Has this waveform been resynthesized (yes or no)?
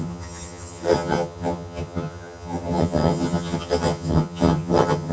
yes